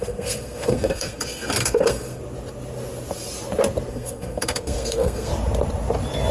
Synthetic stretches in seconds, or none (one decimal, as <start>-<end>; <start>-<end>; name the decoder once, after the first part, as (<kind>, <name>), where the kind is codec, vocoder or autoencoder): 0.0-2.2 (codec, SNAC); 3.9-5.3

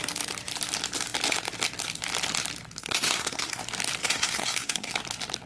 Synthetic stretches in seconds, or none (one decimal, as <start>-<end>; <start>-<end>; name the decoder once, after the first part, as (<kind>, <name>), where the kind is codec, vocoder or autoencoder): 2.8-3.6 (codec, SNAC); 4.0-4.9

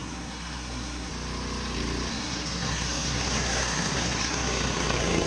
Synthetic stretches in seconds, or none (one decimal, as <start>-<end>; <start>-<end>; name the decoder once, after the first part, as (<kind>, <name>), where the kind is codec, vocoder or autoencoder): 0.0-1.1 (codec, SNAC); 2.1-5.3